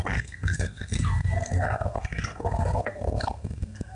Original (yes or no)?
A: no